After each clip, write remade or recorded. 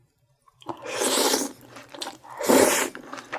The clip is remade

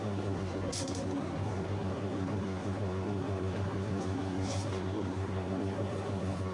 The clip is remade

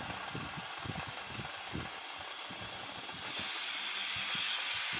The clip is recorded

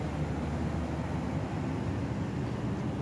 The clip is recorded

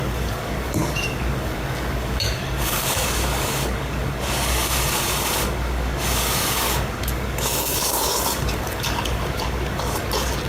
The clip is remade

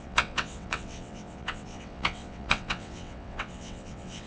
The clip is remade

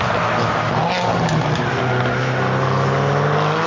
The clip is recorded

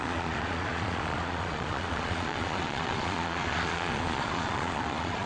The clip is remade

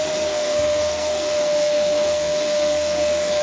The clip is remade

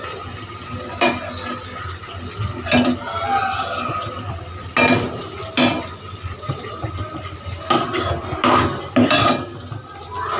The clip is recorded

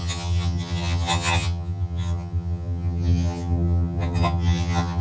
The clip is remade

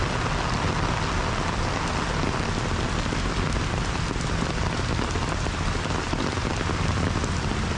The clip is recorded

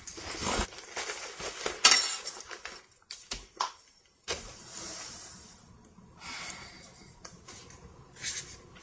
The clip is recorded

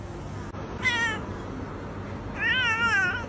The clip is recorded